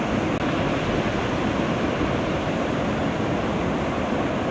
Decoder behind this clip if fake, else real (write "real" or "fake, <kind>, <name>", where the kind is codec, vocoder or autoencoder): real